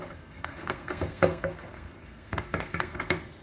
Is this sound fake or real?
fake